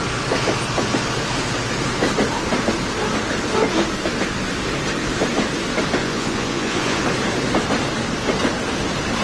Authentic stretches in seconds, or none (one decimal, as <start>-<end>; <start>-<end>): 0.0-6.0; 7.0-9.2